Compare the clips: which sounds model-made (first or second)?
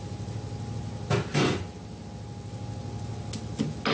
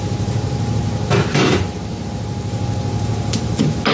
second